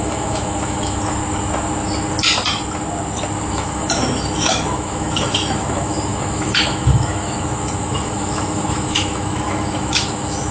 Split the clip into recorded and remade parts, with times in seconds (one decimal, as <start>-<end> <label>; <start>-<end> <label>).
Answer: 0.0-1.2 remade; 1.2-3.5 recorded; 3.5-10.5 remade